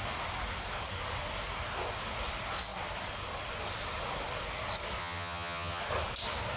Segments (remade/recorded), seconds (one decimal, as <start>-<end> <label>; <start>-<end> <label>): 0.0-5.0 recorded; 5.0-5.8 remade; 5.8-6.6 recorded